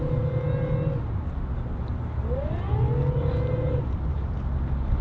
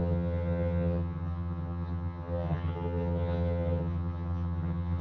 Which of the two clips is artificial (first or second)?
second